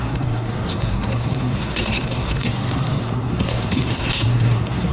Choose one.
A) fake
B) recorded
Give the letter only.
A